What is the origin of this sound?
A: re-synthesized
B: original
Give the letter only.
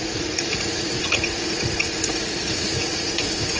A